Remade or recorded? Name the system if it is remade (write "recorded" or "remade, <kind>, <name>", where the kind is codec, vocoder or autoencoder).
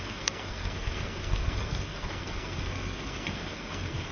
remade, codec, SNAC